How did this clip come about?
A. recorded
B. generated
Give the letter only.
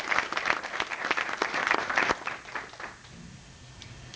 A